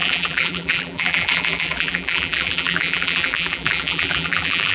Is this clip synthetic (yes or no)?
yes